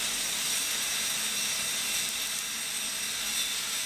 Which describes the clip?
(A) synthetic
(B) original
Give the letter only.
B